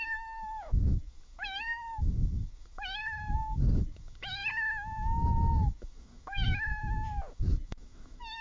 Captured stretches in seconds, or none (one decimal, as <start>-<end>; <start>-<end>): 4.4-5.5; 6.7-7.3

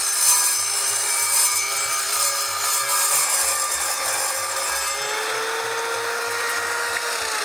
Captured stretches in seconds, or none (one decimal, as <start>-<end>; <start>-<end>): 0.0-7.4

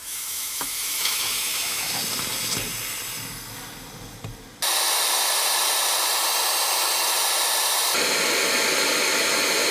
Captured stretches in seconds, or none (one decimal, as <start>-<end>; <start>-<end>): 1.9-9.7